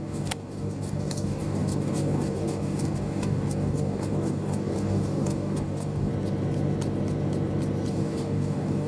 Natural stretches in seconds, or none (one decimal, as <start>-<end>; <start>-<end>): 6.1-7.9